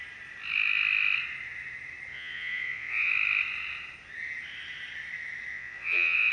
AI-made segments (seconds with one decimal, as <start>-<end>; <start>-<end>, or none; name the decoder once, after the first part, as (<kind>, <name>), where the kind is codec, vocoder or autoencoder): 2.1-3.1 (vocoder, Vocos); 5.5-6.3